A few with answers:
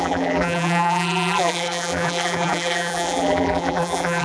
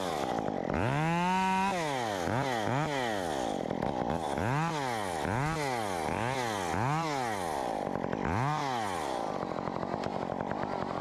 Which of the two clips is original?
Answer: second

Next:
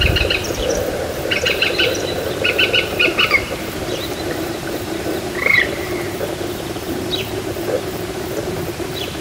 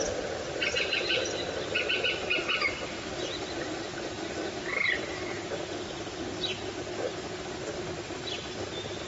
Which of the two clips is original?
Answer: second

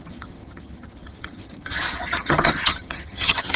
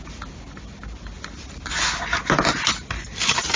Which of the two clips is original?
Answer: second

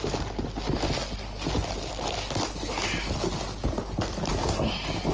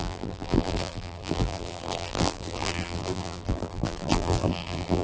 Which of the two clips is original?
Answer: first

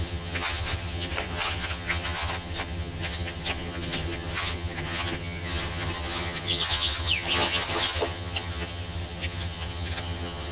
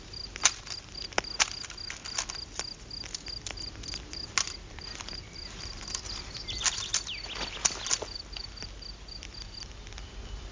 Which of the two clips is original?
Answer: second